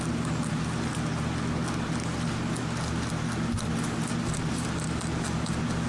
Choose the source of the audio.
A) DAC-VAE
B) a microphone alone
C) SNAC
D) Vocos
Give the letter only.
B